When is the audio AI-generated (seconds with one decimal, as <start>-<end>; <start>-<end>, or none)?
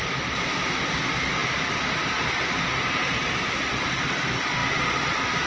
none